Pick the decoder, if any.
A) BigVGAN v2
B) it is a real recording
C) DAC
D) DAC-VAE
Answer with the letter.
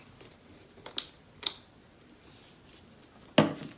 B